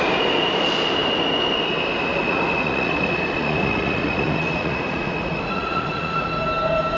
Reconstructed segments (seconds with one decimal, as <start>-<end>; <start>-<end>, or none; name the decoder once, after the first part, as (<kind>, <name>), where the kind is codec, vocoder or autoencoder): 2.1-6.3 (vocoder, Vocos)